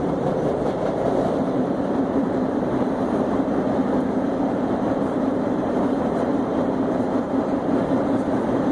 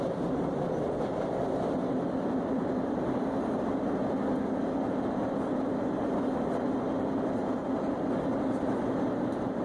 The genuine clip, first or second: second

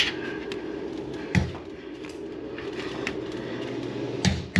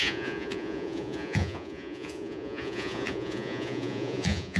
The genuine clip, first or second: first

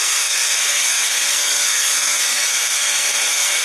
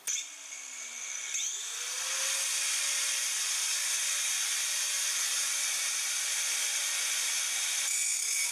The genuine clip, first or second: second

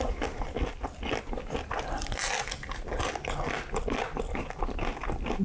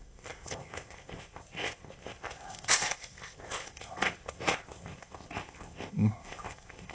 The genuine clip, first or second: first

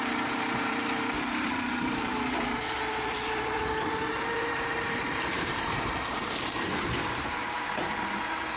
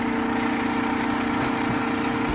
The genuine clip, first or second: second